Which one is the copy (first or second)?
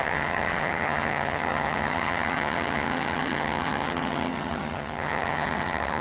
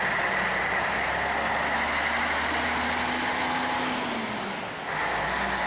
first